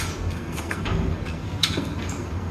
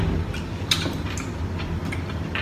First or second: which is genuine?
second